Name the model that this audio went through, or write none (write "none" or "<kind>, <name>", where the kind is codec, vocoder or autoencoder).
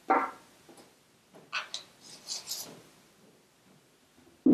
none